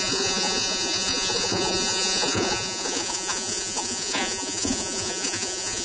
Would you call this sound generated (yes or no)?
yes